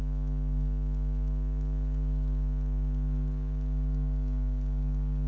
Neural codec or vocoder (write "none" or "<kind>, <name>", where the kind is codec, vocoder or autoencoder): codec, DAC